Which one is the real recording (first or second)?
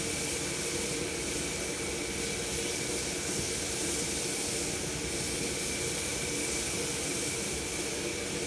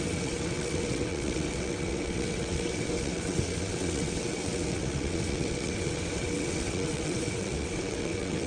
first